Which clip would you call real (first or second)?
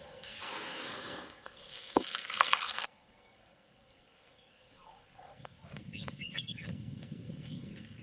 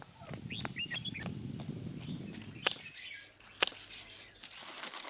second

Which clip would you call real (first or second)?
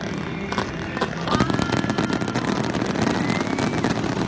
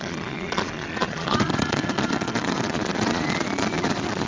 first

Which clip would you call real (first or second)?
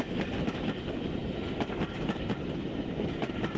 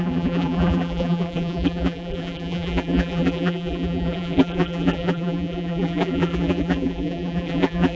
first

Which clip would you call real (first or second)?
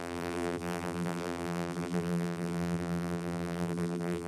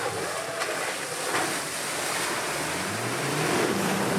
second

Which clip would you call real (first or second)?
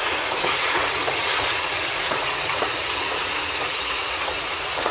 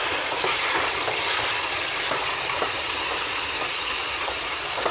second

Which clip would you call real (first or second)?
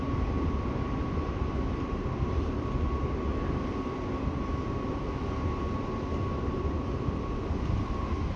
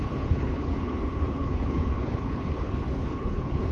first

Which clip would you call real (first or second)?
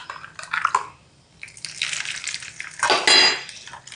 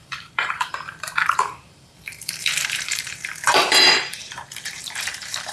first